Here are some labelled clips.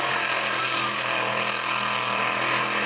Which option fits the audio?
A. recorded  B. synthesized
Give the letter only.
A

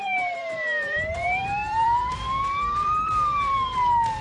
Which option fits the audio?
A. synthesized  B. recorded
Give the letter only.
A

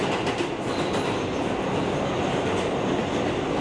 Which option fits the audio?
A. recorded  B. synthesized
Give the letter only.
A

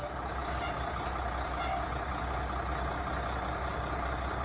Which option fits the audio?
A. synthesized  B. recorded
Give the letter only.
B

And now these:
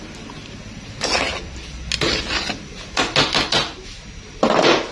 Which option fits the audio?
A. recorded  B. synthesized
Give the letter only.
A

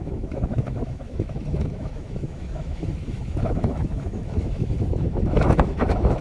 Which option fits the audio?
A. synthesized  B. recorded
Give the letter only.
A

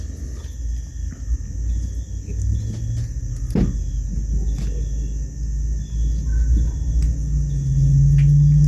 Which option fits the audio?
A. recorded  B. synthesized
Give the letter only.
A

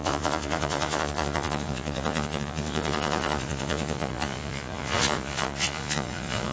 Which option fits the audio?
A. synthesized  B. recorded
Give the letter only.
A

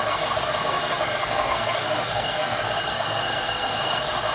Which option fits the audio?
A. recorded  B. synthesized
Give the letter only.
B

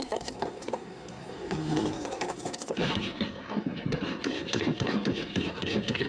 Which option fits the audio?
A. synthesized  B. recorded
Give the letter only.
A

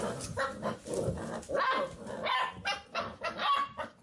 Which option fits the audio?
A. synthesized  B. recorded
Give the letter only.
B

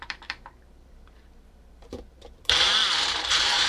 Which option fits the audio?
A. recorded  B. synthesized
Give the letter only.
B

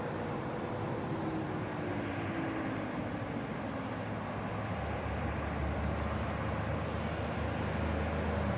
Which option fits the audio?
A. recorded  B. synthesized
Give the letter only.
A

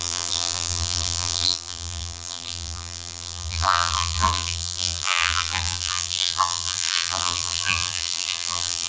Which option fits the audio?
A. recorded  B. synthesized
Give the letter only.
B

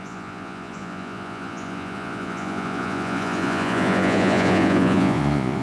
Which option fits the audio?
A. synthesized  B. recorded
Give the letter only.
A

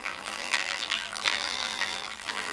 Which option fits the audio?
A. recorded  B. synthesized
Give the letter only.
B